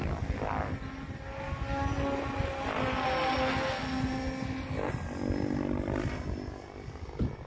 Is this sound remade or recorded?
recorded